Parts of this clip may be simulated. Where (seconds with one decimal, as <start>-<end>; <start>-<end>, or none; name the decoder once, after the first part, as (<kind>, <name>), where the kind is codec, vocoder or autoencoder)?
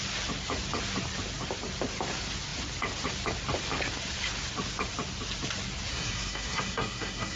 5.9-7.4 (codec, SNAC)